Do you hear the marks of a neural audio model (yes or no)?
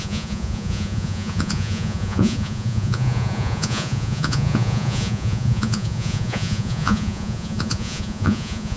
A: yes